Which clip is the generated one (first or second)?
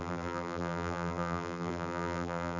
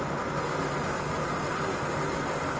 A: first